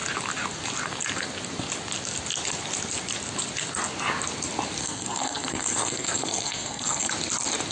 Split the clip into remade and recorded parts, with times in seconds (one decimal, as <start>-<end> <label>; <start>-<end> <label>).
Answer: 0.0-4.8 recorded; 4.8-7.1 remade; 7.1-7.7 recorded

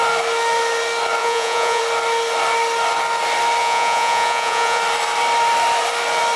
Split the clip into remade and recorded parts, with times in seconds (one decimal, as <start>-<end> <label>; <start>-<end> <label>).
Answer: 0.0-1.2 recorded; 1.2-1.8 remade; 1.8-3.6 recorded; 3.6-4.8 remade; 4.8-6.4 recorded

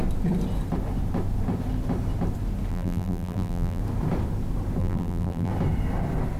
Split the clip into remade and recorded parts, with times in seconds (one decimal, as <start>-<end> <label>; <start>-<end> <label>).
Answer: 0.0-2.7 recorded; 2.7-3.8 remade; 3.8-4.8 recorded; 4.8-5.5 remade; 5.5-6.4 recorded

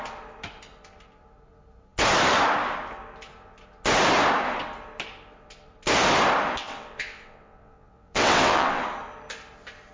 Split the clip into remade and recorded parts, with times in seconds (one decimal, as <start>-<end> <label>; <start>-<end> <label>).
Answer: 0.0-6.6 recorded; 6.6-8.8 remade; 8.8-9.9 recorded

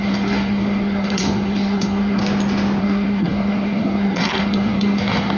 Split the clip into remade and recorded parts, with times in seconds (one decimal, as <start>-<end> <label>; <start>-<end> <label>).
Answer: 0.0-2.2 remade; 2.2-2.8 recorded; 2.8-5.4 remade

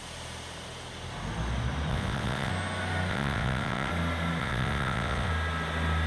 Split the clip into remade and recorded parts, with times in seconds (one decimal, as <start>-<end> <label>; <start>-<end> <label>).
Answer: 0.0-1.9 recorded; 1.9-2.5 remade; 2.5-3.1 recorded; 3.1-3.9 remade; 3.9-4.4 recorded; 4.4-5.3 remade; 5.3-6.1 recorded

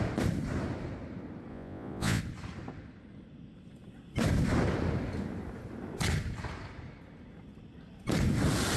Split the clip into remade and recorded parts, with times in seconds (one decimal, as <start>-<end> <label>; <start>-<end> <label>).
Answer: 0.0-1.5 recorded; 1.5-2.2 remade; 2.2-8.8 recorded

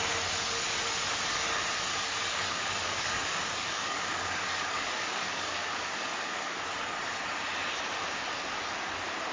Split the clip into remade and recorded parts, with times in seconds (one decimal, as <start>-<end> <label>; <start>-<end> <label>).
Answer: 0.0-1.9 recorded; 1.9-6.6 remade; 6.6-9.3 recorded